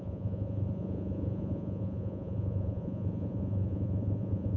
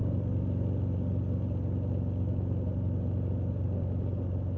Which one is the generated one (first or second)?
first